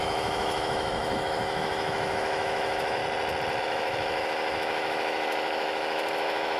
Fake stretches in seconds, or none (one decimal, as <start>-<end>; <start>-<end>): 0.0-3.0; 3.6-6.6